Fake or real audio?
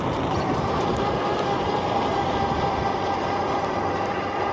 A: fake